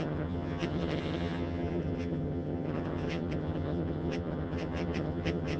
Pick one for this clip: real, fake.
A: fake